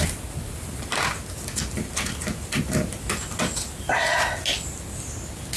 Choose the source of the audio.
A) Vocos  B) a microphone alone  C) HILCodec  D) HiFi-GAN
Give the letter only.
B